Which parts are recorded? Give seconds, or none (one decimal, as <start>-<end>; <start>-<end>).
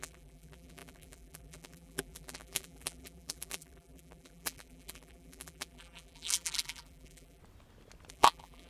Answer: 7.4-8.1